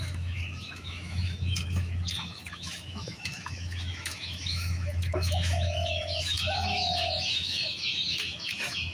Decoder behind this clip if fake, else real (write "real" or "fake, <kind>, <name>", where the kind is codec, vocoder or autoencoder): fake, autoencoder, DAC-VAE